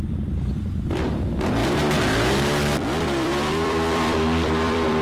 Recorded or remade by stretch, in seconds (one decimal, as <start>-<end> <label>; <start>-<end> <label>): 0.0-1.6 remade; 1.6-3.0 recorded; 3.0-5.0 remade